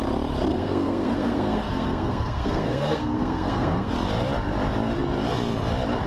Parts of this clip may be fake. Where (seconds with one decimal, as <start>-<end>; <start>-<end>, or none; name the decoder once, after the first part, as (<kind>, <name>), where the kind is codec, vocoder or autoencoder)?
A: 0.5-3.9 (codec, SNAC)